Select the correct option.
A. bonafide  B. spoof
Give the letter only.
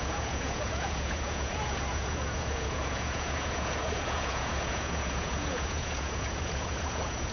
B